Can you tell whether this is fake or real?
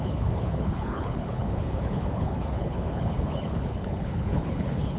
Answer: fake